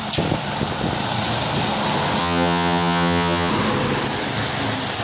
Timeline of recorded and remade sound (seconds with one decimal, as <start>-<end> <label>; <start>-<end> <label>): 0.0-2.2 recorded; 2.2-3.5 remade; 3.5-5.0 recorded